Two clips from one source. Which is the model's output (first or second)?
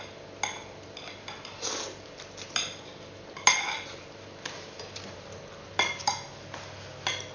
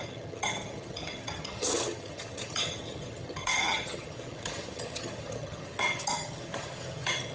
second